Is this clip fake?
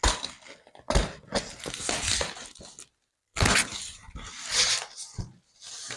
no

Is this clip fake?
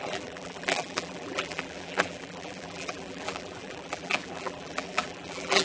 yes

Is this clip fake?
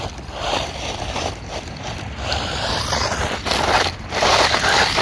yes